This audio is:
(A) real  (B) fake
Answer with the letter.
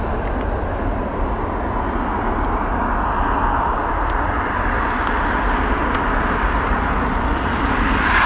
A